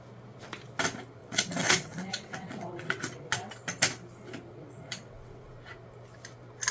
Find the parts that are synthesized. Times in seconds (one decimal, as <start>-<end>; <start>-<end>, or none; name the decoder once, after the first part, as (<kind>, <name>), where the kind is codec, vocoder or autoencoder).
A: 1.2-3.5 (vocoder, WaveNeXt); 4.5-5.5